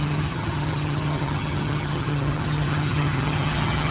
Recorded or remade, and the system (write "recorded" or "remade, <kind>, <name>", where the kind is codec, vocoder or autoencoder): remade, vocoder, HiFi-GAN